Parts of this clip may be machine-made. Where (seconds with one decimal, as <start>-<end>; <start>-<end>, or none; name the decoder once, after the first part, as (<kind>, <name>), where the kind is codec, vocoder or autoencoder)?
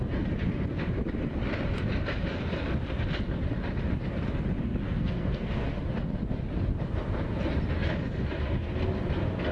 4.6-5.7 (codec, SNAC)